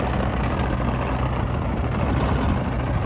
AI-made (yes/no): no